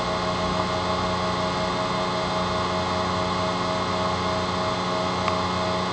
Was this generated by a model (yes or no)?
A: no